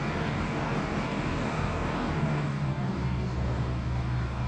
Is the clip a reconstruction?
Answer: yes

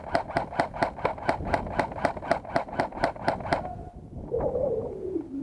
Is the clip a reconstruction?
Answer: no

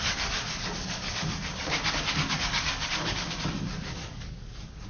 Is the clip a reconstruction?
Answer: yes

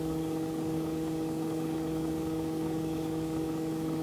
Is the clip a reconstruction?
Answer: yes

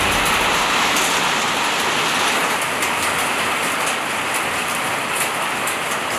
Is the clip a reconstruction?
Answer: no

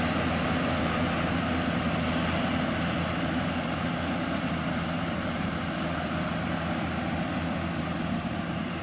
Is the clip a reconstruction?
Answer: no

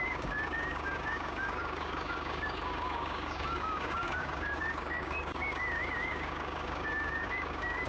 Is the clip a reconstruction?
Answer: yes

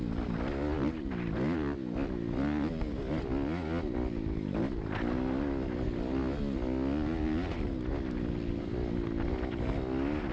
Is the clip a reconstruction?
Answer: no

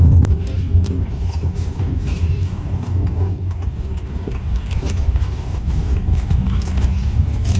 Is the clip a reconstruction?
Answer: yes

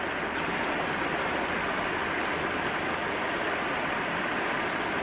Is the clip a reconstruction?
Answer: no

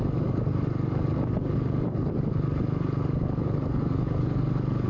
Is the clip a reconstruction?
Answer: yes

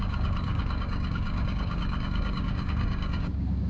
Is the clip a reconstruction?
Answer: yes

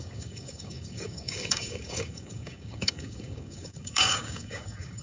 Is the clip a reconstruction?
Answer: yes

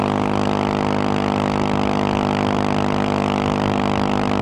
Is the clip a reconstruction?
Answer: no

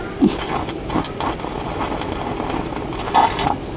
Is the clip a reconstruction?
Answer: no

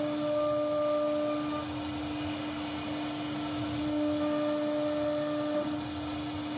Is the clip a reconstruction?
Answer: no